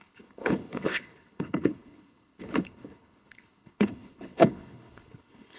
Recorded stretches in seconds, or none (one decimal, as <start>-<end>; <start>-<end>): none